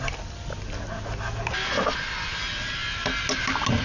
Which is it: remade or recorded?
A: recorded